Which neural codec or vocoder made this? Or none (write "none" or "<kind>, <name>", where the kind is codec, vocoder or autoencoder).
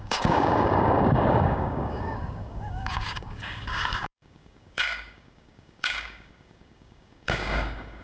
codec, DAC